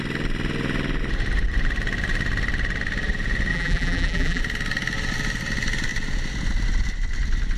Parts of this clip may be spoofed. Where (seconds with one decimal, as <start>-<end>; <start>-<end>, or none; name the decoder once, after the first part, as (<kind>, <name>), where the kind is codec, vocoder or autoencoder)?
3.5-4.4 (vocoder, BigVGAN v2)